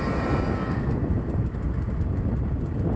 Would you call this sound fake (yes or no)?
no